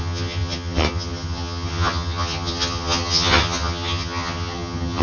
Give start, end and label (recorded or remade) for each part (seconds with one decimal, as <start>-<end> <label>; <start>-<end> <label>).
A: 0.0-5.0 remade